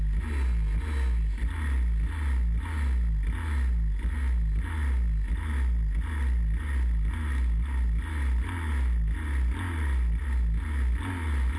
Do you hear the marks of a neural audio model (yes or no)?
no